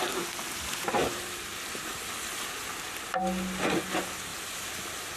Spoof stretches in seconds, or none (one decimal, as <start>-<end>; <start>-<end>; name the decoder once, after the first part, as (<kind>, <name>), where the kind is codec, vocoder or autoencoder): 1.0-3.2 (vocoder, BigVGAN v2); 4.3-4.8